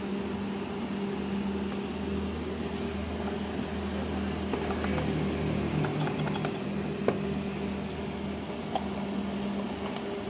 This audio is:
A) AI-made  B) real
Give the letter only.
B